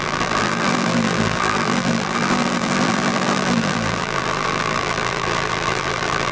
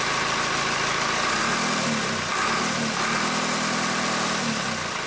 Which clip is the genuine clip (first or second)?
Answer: second